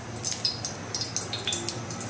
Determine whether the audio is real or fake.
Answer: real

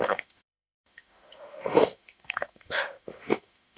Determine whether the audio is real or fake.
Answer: fake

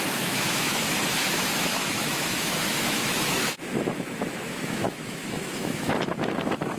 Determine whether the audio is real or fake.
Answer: fake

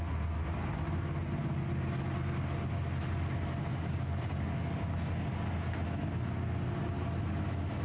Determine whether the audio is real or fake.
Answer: real